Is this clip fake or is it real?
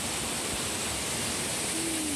real